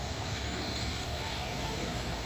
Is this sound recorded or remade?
remade